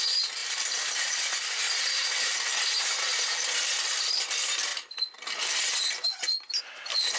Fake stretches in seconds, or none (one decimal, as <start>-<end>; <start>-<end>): 0.4-2.5; 3.1-4.1